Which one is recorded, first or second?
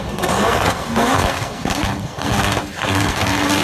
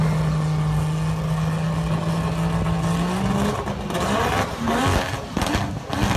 second